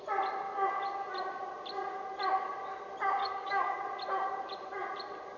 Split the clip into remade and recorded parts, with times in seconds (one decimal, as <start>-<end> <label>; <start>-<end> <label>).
0.0-3.2 recorded; 3.2-3.8 remade; 3.8-5.4 recorded